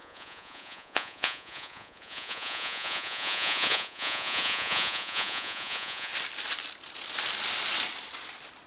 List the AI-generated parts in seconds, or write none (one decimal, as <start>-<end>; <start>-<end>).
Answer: 0.0-6.1

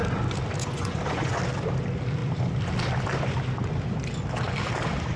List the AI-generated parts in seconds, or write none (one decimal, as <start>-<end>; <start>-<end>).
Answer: 0.6-1.4

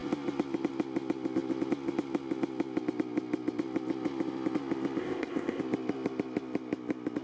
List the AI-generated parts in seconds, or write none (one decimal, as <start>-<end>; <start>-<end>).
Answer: 5.0-5.6

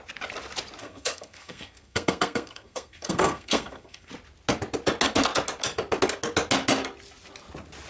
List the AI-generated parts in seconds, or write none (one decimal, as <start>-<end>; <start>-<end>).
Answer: 0.8-4.1

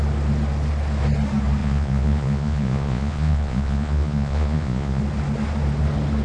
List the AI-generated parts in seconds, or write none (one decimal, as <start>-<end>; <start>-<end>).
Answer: 1.6-5.0

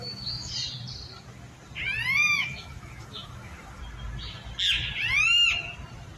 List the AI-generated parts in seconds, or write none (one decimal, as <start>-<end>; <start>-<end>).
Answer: 0.0-0.5; 2.4-3.8

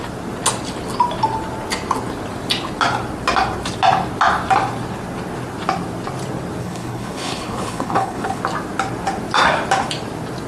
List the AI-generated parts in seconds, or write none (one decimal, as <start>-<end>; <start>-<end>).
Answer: 6.6-8.4

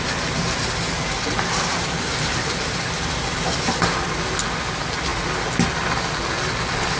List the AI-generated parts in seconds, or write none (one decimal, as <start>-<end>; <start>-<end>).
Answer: 1.7-4.2